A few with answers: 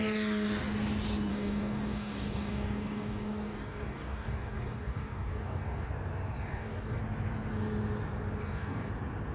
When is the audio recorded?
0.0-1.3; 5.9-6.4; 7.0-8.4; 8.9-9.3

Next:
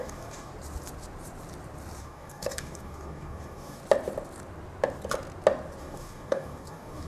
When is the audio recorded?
0.5-2.0; 3.8-5.8